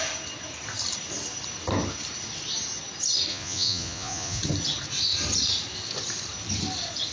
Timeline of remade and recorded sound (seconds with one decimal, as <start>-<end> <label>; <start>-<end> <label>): 0.0-3.3 recorded; 3.3-4.4 remade; 4.4-7.1 recorded